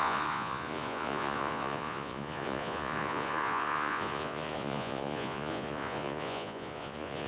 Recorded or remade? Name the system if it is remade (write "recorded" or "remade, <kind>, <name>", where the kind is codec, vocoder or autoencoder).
remade, vocoder, Vocos